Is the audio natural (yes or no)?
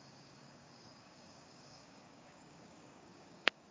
no